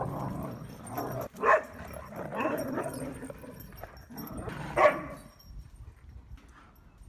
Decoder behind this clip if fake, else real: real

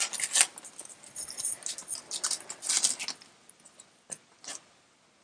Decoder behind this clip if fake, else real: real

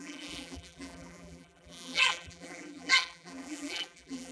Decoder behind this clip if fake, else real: fake, vocoder, BigVGAN v2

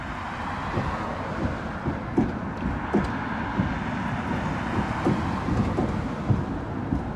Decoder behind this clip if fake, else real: real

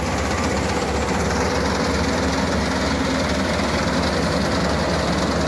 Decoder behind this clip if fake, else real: real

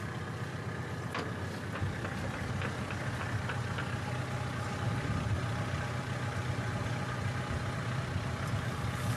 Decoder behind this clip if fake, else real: real